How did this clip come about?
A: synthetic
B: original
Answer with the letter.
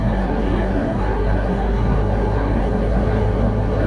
A